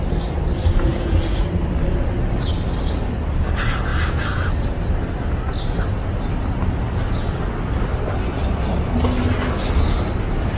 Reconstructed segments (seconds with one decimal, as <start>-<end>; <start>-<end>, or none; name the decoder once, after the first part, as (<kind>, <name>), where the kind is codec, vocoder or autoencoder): none